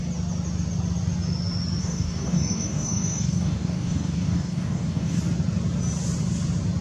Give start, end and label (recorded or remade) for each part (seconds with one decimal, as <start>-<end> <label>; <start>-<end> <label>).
0.0-1.8 recorded; 1.8-5.2 remade; 5.2-6.8 recorded